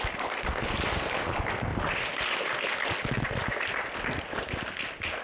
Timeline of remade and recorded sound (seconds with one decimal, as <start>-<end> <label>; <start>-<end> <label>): 0.0-1.7 recorded; 1.7-2.2 remade; 2.2-5.2 recorded